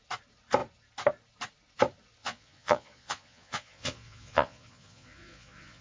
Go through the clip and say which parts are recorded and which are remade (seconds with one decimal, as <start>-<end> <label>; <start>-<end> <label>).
0.0-2.2 recorded; 2.2-5.8 remade